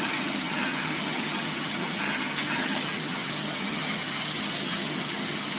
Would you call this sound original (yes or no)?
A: no